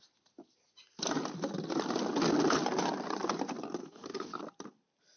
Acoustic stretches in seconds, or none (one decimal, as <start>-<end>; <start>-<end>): 0.0-3.8; 4.4-5.2